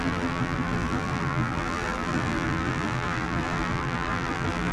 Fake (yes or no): yes